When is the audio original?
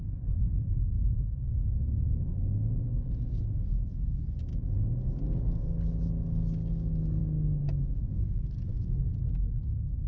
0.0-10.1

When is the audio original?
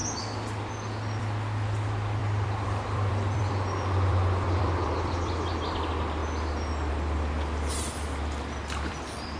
0.0-2.2; 5.5-9.4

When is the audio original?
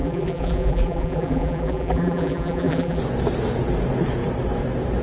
3.0-5.0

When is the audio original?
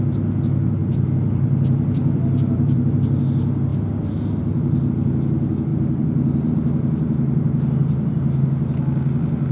0.0-0.8; 3.2-9.5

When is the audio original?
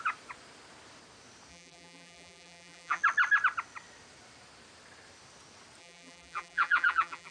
0.0-1.5; 3.0-5.8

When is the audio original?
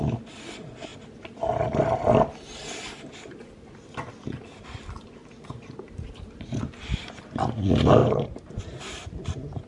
0.0-5.2; 7.1-8.0